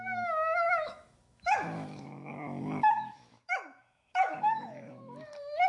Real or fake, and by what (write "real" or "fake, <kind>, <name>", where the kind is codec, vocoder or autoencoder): fake, autoencoder, DAC-VAE